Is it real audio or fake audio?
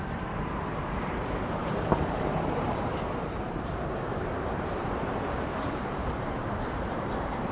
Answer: fake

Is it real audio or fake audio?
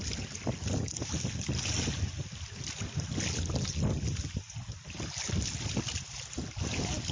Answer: real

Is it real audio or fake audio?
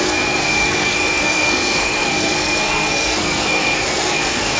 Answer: fake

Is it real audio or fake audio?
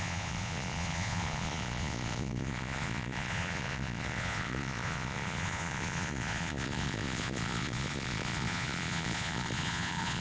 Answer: fake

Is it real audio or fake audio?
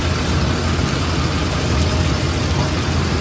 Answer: real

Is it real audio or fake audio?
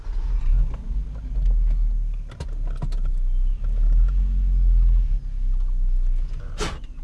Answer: real